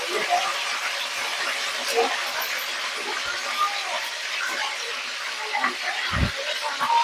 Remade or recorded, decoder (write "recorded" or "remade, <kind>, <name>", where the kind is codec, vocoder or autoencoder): recorded